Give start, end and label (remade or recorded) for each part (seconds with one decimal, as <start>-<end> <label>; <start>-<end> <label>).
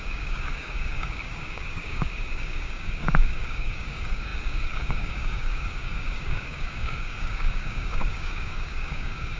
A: 0.0-9.4 remade